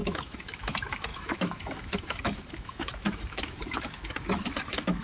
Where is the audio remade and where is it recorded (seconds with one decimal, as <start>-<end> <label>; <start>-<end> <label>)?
0.0-5.0 remade